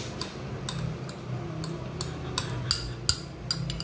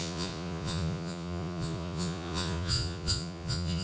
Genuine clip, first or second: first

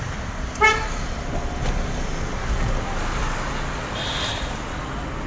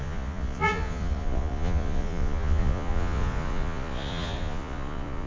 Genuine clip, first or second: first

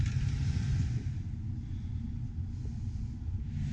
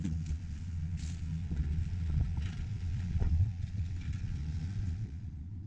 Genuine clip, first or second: first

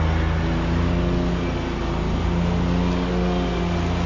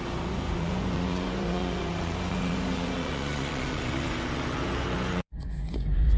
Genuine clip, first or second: first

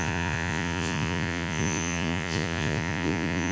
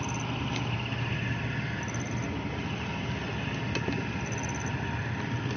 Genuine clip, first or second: second